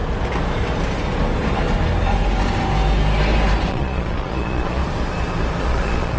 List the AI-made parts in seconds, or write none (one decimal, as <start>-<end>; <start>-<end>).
3.7-4.8; 5.6-6.2